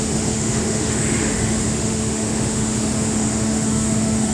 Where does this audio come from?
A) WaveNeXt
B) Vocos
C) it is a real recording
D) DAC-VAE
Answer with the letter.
D